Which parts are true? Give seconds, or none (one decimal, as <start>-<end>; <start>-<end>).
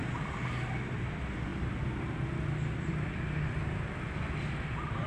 0.0-5.1